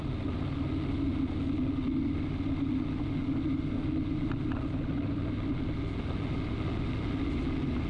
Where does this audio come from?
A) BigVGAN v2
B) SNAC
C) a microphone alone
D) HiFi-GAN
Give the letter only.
C